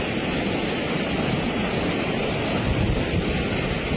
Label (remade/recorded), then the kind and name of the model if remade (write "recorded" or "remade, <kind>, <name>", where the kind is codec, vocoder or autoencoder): recorded